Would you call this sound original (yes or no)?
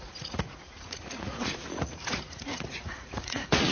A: no